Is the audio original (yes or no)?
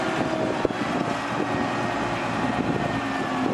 yes